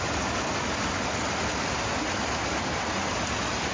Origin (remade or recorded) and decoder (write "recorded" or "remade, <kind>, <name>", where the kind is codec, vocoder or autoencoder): recorded